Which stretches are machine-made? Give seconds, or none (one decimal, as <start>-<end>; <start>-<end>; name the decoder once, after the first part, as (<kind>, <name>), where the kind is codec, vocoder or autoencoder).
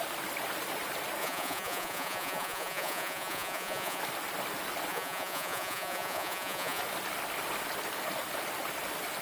1.2-4.0 (vocoder, Vocos); 4.9-6.8